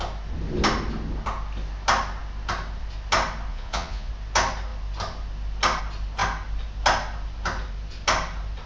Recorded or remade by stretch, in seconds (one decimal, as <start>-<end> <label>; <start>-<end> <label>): 0.0-3.5 recorded; 3.5-4.1 remade; 4.1-8.7 recorded